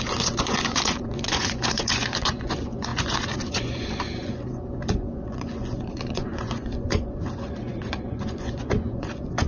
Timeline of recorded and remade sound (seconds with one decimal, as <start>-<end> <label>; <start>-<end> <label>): 0.0-9.5 remade